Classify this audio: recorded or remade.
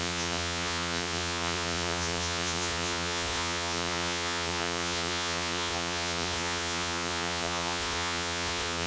remade